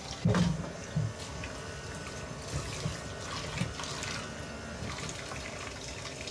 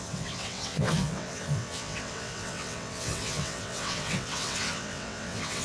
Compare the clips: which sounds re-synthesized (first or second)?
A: second